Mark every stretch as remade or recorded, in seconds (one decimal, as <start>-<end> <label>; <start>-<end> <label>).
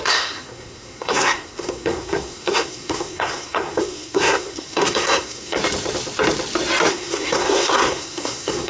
0.0-5.6 remade; 5.6-6.9 recorded; 6.9-8.7 remade